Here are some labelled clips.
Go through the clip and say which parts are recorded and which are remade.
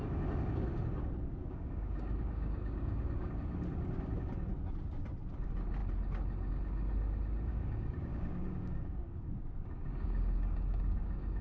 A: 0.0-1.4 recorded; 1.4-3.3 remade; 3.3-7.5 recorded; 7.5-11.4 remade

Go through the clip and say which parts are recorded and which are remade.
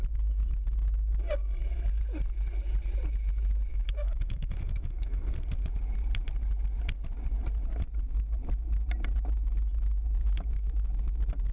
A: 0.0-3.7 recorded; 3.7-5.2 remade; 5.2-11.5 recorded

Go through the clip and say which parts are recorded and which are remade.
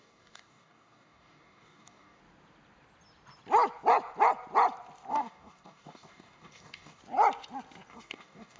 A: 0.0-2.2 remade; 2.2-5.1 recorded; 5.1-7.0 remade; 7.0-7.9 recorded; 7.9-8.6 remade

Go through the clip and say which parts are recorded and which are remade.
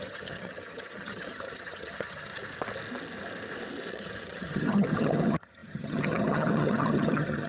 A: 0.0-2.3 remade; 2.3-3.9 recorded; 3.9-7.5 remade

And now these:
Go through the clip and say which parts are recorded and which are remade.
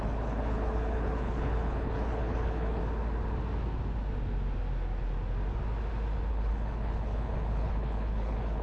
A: 0.0-2.8 remade; 2.8-6.3 recorded; 6.3-8.6 remade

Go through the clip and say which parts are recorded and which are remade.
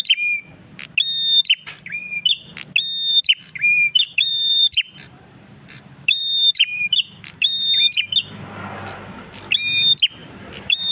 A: 0.0-3.1 recorded; 3.1-8.0 remade; 8.0-10.2 recorded; 10.2-10.9 remade